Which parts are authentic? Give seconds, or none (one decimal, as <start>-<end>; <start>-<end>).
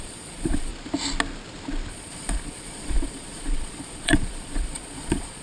0.7-1.9